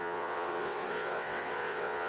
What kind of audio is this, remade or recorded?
remade